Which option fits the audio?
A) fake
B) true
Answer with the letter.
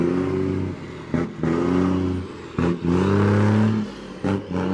B